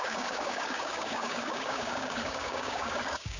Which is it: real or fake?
fake